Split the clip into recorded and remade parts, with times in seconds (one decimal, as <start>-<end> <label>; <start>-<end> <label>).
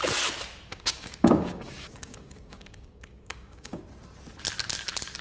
0.0-0.7 recorded; 0.7-3.8 remade; 3.8-5.2 recorded